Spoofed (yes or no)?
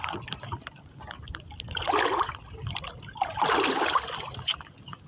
no